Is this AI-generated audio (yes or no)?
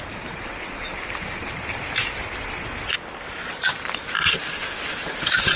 no